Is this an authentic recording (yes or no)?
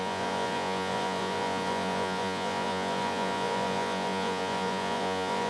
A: no